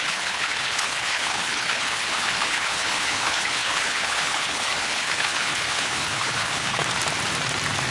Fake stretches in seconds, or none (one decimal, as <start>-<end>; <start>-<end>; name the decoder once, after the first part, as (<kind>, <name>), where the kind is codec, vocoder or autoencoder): 0.0-6.8 (codec, HILCodec)